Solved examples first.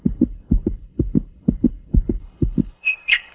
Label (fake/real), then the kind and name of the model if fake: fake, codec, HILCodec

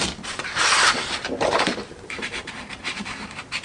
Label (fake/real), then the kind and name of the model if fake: fake, vocoder, BigVGAN v2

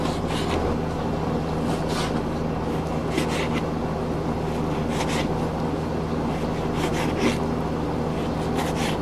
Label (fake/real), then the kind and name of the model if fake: real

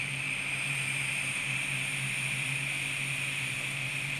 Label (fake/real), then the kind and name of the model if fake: real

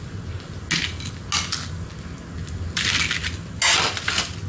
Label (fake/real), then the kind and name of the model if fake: real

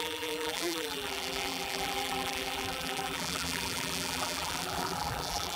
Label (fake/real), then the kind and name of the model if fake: fake, vocoder, BigVGAN v2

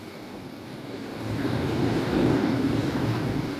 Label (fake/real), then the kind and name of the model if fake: fake, codec, DAC